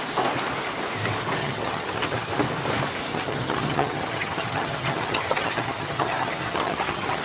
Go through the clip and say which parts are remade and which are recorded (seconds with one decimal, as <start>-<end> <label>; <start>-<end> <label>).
0.0-1.4 recorded; 1.4-2.3 remade; 2.3-3.1 recorded; 3.1-7.2 remade